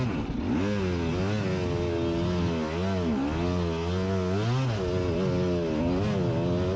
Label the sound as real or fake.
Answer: real